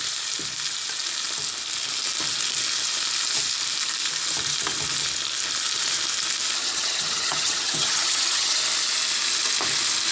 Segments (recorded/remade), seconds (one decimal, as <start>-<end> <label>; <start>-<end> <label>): 0.0-6.6 recorded; 6.6-8.6 remade; 8.6-10.1 recorded